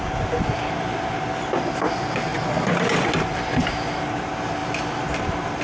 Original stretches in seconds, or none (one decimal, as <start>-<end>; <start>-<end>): 0.0-5.6

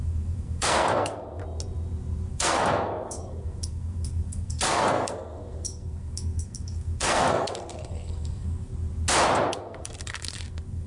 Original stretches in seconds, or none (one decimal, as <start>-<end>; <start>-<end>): 1.4-2.3; 8.7-9.5

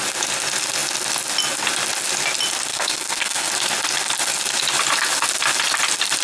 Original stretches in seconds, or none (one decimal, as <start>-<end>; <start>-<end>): 0.0-2.7; 3.5-6.2

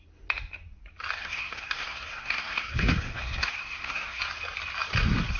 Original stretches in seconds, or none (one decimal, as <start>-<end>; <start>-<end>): 0.0-1.2; 4.2-5.4

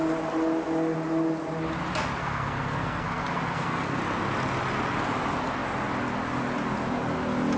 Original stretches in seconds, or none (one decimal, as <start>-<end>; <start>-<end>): 0.0-2.2; 4.0-7.6

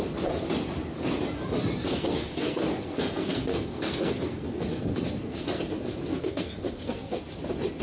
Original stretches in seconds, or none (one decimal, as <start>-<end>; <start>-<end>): 0.0-1.8; 5.6-6.1; 7.2-7.8